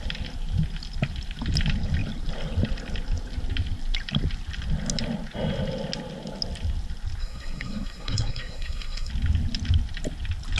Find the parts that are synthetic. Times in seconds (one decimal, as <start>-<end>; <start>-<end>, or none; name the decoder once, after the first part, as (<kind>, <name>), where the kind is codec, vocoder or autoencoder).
7.2-9.1 (codec, SNAC)